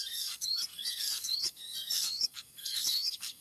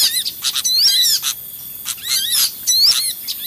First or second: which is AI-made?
first